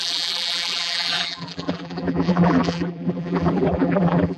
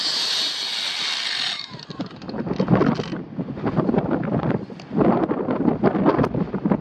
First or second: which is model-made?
first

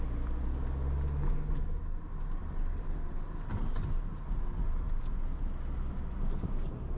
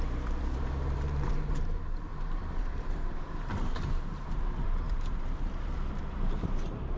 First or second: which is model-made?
second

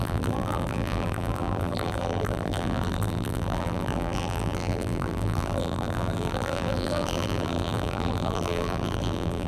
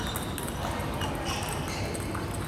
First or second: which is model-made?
first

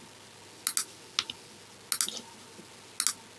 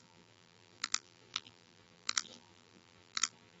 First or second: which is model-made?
second